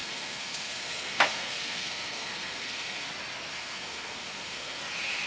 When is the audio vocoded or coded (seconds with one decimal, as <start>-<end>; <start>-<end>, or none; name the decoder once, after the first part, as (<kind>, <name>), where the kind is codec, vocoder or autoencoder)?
0.0-3.1 (codec, SNAC); 3.5-4.8